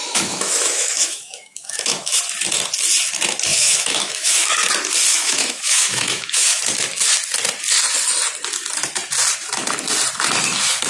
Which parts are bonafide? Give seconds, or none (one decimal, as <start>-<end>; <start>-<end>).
2.2-3.5; 4.5-5.1; 6.6-10.9

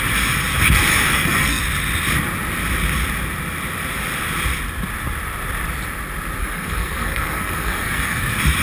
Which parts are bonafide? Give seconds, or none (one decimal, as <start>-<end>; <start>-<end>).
0.0-0.9; 1.6-6.4; 8.2-8.6

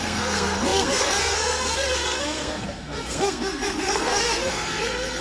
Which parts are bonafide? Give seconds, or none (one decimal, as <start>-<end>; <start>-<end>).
none

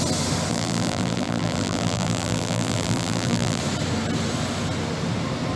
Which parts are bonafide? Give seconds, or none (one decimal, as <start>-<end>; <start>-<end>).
0.0-0.5; 3.6-5.6

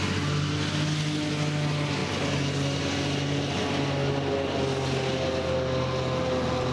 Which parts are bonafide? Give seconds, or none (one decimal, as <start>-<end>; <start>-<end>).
0.0-6.7